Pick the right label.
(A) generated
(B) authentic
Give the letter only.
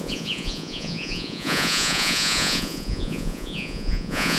A